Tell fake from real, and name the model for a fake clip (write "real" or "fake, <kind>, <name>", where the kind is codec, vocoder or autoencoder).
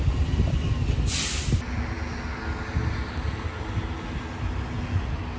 real